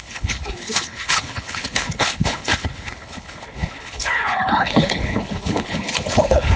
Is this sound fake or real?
fake